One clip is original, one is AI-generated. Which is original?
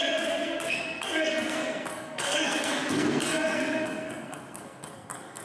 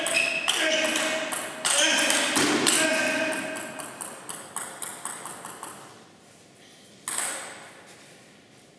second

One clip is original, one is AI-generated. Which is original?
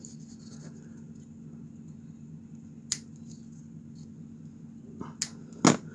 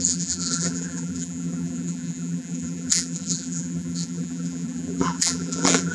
first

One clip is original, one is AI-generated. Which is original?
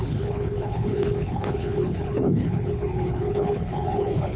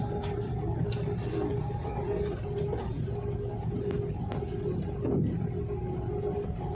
second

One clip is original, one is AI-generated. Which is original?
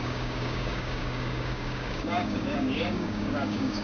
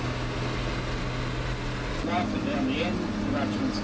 second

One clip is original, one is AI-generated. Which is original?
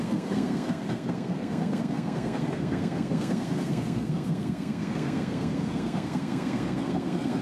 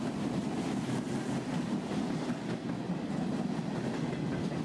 second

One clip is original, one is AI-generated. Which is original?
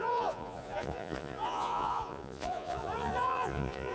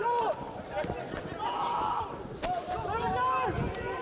second